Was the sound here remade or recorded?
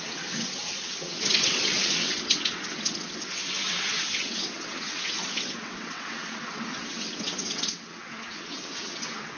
remade